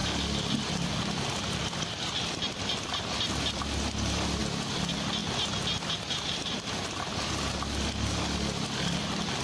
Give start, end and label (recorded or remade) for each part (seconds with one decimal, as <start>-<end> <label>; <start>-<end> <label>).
0.0-9.4 recorded